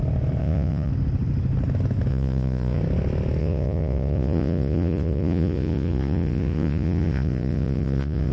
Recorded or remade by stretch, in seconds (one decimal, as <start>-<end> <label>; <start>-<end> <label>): 0.0-0.4 recorded; 0.4-0.9 remade; 0.9-2.1 recorded; 2.1-2.8 remade; 2.8-3.4 recorded; 3.4-8.3 remade